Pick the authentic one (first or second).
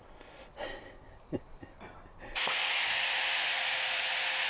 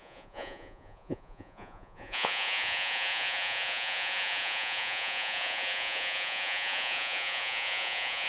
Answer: first